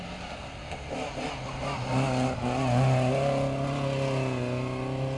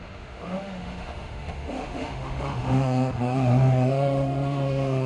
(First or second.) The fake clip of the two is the second